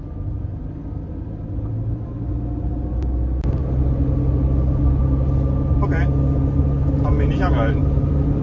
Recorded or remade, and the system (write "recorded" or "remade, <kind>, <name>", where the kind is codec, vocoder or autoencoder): recorded